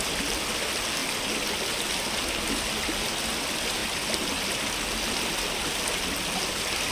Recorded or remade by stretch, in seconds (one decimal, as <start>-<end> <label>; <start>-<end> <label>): 0.0-6.9 recorded